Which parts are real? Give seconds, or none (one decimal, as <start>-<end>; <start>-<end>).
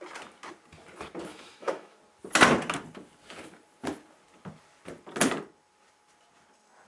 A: 0.0-1.3; 2.0-6.9